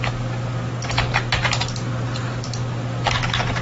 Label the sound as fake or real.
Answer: real